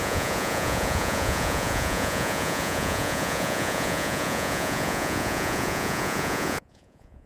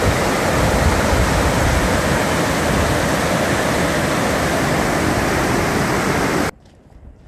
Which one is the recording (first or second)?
second